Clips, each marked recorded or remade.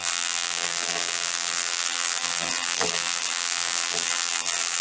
remade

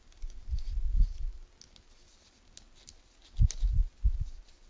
recorded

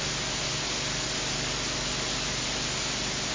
recorded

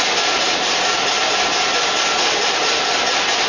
remade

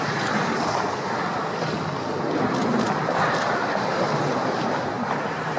recorded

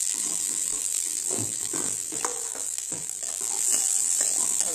remade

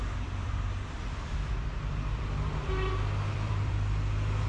remade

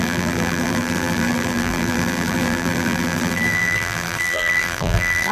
remade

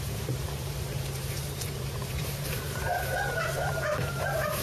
remade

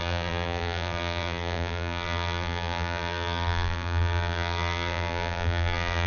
remade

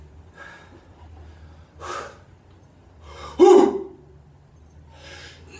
recorded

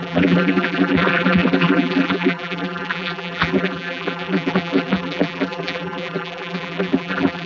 remade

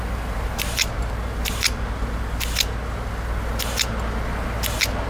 recorded